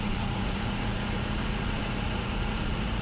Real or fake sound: fake